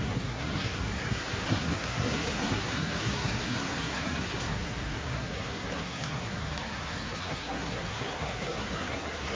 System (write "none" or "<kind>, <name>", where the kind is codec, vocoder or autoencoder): codec, SNAC